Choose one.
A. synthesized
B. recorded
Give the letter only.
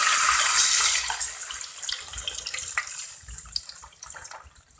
B